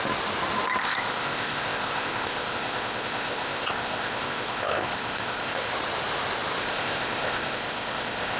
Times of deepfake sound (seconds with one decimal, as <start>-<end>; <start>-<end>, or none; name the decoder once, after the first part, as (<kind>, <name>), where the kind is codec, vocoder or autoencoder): 0.8-5.7 (codec, ZipCodec); 6.6-8.4